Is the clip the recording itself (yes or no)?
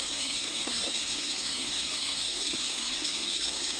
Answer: no